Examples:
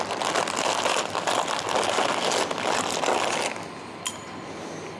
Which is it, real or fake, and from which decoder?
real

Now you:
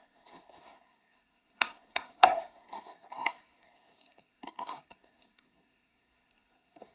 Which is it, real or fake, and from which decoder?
fake, codec, SNAC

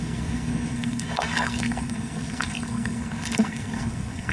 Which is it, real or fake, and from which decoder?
fake, codec, SNAC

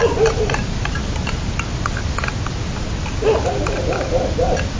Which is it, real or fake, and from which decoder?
real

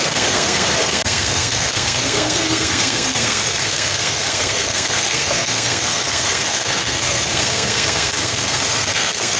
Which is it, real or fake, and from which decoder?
fake, codec, SNAC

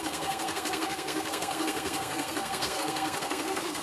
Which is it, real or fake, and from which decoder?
fake, codec, SNAC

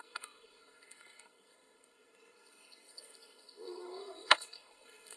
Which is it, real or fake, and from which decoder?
fake, codec, SNAC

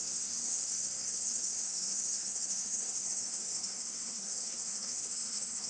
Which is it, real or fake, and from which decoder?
fake, codec, SNAC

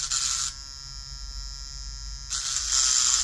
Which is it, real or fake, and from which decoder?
real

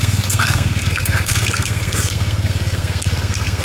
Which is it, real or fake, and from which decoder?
fake, codec, SNAC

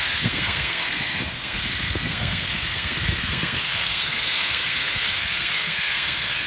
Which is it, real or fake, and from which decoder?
fake, codec, SNAC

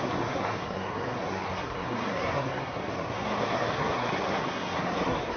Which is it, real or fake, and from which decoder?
fake, codec, SNAC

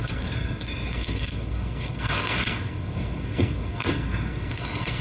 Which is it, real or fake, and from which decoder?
fake, codec, SNAC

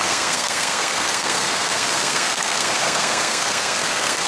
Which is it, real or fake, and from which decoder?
fake, codec, SNAC